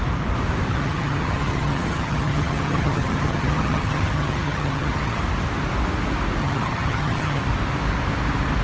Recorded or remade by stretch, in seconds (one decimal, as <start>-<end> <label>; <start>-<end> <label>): 0.0-0.7 recorded; 0.7-5.2 remade; 5.2-6.4 recorded; 6.4-7.4 remade; 7.4-8.6 recorded